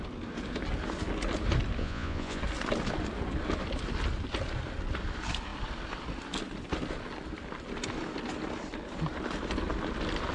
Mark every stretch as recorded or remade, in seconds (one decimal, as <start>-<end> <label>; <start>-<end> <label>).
0.0-1.8 recorded; 1.8-2.4 remade; 2.4-10.3 recorded